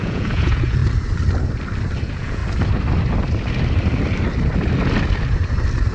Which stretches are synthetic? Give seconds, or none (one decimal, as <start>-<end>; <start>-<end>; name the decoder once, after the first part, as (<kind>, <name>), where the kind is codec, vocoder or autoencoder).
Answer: 0.0-0.8 (vocoder, Vocos); 2.0-2.4